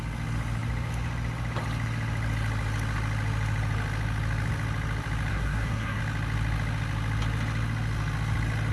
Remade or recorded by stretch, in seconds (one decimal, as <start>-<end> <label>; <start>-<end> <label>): 0.0-5.3 recorded; 5.3-6.0 remade; 6.0-8.7 recorded